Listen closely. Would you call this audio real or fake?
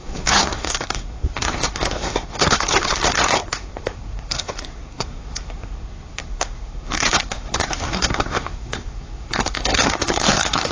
fake